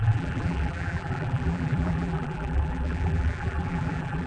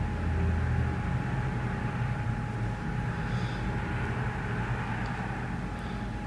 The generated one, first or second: first